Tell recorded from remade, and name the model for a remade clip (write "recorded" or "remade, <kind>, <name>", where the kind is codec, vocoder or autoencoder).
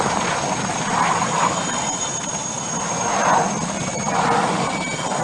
recorded